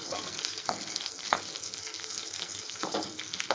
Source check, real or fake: fake